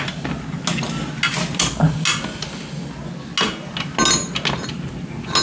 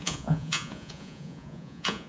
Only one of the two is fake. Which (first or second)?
second